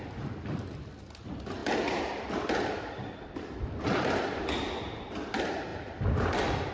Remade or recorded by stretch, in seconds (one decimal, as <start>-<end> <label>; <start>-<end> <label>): 0.0-1.0 remade; 1.0-1.6 recorded; 1.6-4.4 remade; 4.4-5.7 recorded; 5.7-6.7 remade